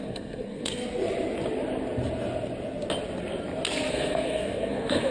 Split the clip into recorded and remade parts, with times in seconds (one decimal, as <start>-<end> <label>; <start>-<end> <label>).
0.0-0.8 remade; 0.8-3.9 recorded; 3.9-5.1 remade